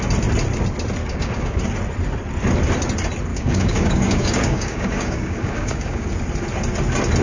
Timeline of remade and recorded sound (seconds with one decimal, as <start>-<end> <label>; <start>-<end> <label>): 0.0-1.0 recorded; 1.0-1.6 remade; 1.6-3.3 recorded; 3.3-6.1 remade; 6.1-7.2 recorded